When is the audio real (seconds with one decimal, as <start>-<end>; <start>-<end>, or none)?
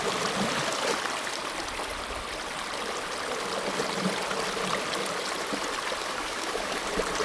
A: 0.0-6.0; 6.8-7.2